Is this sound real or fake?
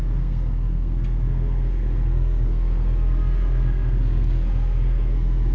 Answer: fake